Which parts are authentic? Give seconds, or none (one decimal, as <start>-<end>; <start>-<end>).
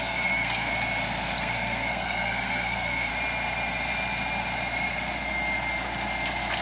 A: 0.7-1.4; 3.1-6.6